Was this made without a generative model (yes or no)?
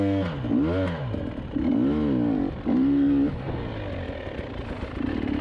yes